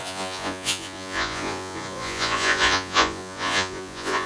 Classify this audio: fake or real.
fake